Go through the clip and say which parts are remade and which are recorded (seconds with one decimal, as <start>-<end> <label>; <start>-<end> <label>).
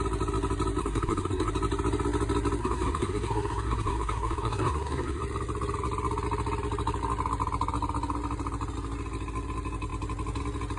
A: 0.0-0.8 recorded; 0.8-1.5 remade; 1.5-2.6 recorded; 2.6-5.2 remade; 5.2-10.8 recorded